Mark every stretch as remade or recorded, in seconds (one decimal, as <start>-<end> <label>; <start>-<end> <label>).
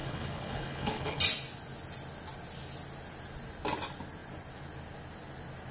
0.0-1.2 remade; 1.2-5.7 recorded